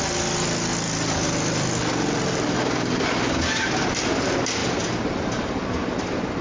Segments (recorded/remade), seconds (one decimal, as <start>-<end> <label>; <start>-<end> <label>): 0.0-6.4 recorded